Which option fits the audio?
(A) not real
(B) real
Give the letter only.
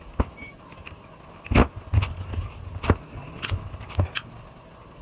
B